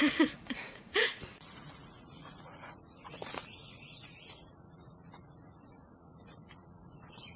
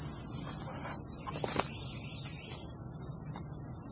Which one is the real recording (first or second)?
second